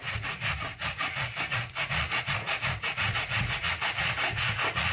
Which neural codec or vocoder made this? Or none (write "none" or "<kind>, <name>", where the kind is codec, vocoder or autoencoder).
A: vocoder, Vocos